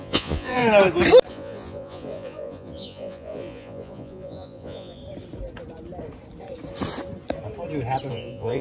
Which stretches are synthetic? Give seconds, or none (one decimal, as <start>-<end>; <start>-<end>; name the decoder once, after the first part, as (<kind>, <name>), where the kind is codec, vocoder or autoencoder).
0.0-0.6 (vocoder, Vocos); 1.3-5.0; 8.1-8.6